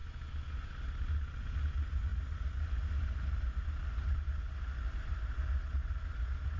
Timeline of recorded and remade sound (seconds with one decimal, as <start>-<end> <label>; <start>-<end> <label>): 0.0-6.6 recorded